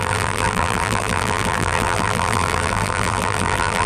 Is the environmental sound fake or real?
fake